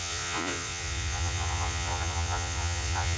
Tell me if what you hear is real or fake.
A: fake